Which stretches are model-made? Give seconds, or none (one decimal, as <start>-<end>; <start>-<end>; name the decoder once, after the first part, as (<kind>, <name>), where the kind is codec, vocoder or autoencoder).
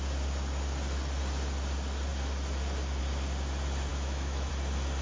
3.9-4.5 (autoencoder, DAC-VAE)